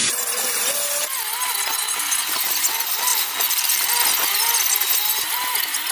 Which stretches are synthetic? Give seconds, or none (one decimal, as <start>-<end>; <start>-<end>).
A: 0.0-0.6; 3.1-3.9